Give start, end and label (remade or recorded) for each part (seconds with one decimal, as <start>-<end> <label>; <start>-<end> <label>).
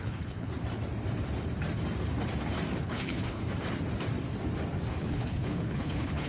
0.0-0.5 remade; 0.5-2.8 recorded; 2.8-3.4 remade; 3.4-4.9 recorded; 4.9-6.3 remade